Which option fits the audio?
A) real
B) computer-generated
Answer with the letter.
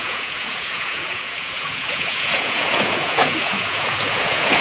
B